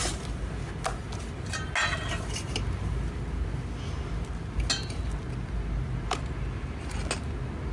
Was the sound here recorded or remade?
recorded